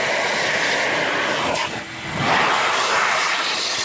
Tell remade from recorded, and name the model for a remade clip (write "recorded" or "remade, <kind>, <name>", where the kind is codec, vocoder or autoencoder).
recorded